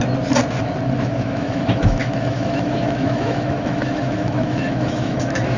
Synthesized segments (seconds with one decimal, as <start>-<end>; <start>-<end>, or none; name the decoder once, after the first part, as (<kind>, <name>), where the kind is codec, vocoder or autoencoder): 1.1-5.6 (autoencoder, DAC-VAE)